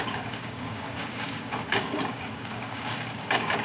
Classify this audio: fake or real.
fake